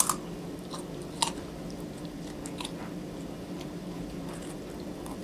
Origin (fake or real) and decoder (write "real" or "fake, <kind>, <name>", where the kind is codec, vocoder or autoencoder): real